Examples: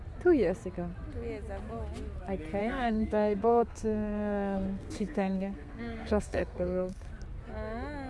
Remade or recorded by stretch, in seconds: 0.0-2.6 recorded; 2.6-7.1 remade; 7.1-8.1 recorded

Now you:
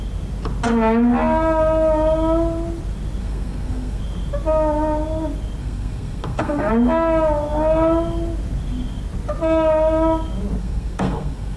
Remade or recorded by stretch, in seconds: 0.0-3.2 recorded; 3.2-4.0 remade; 4.0-5.6 recorded; 5.6-6.7 remade; 6.7-10.6 recorded; 10.6-11.6 remade

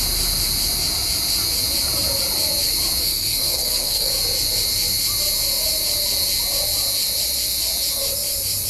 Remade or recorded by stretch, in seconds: 0.0-3.0 recorded; 3.0-4.1 remade; 4.1-8.7 recorded

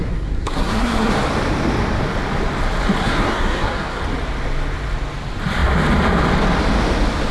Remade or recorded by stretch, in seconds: 0.0-1.1 remade; 1.1-3.0 recorded; 3.0-4.0 remade; 4.0-7.3 recorded

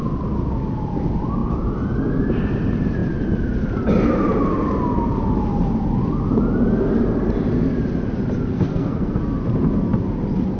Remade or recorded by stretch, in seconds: 0.0-8.5 recorded; 8.5-9.2 remade; 9.2-10.6 recorded

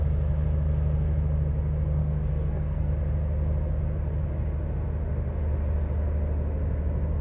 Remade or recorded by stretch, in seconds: 0.0-2.0 recorded; 2.0-2.9 remade; 2.9-7.2 recorded